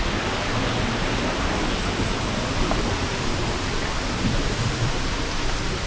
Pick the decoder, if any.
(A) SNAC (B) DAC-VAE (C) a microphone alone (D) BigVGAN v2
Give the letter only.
C